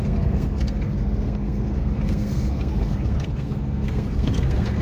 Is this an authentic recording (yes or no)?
no